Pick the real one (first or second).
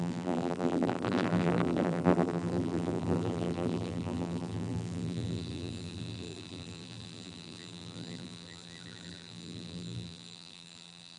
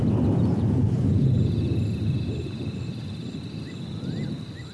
second